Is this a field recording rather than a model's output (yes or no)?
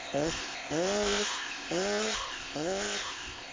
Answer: no